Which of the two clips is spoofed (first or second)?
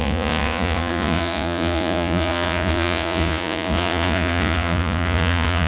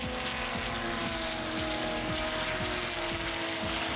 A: first